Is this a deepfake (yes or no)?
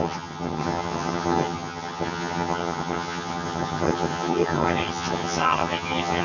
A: yes